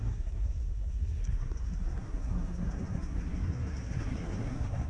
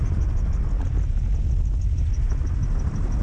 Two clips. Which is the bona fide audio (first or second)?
second